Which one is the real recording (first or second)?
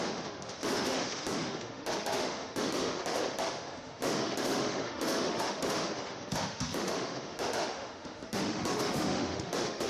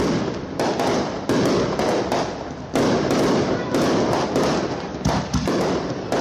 second